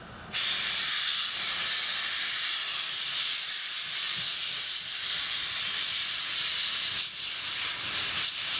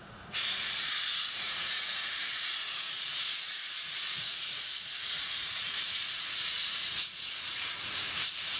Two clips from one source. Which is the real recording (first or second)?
first